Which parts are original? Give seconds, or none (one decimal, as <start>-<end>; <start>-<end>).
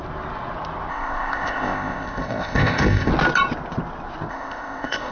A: 0.0-0.9; 3.1-4.3